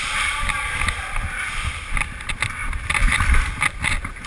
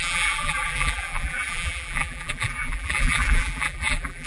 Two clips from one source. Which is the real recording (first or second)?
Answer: first